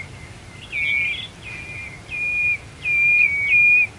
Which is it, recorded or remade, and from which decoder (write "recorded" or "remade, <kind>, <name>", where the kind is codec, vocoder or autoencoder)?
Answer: recorded